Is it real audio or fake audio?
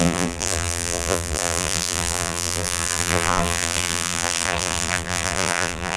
fake